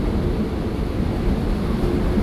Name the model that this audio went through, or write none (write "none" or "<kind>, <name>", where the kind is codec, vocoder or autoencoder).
none